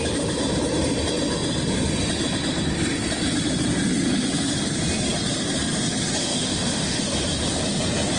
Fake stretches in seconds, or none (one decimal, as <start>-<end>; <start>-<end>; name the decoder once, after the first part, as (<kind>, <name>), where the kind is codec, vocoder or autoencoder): 6.2-7.0 (autoencoder, DAC-VAE)